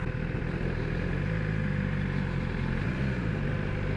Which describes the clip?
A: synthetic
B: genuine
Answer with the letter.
B